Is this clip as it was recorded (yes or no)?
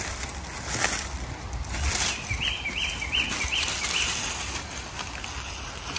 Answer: yes